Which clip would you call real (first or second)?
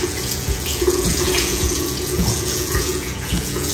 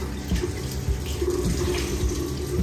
second